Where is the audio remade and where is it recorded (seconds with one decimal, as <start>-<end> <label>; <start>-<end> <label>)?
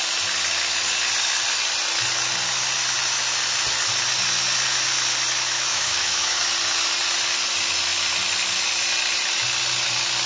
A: 0.0-5.7 recorded; 5.7-6.4 remade; 6.4-10.3 recorded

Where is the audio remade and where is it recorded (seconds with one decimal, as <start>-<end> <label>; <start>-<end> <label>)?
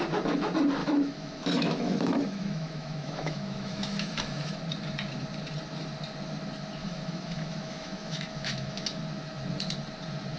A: 0.0-0.8 recorded; 0.8-4.6 remade; 4.6-6.8 recorded; 6.8-9.0 remade; 9.0-10.4 recorded